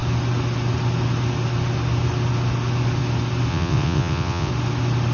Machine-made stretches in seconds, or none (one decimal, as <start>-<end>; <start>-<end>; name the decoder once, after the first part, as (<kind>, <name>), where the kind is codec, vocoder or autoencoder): 3.5-4.5 (vocoder, WaveNeXt)